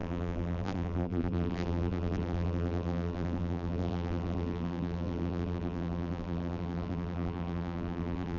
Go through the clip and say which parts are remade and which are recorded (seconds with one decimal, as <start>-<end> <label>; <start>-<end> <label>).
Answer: 0.0-8.4 remade

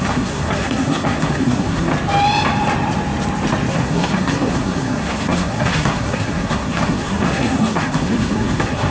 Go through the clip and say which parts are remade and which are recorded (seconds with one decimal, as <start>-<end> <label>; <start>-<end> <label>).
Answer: 0.0-1.9 remade; 1.9-3.7 recorded; 3.7-8.9 remade

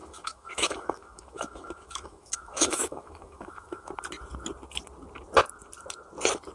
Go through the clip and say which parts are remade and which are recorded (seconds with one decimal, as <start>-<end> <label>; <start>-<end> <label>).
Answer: 0.0-3.9 remade; 3.9-6.5 recorded